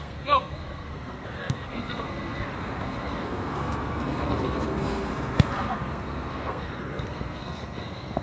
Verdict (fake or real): fake